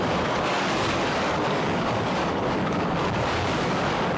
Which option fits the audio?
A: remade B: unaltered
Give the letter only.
A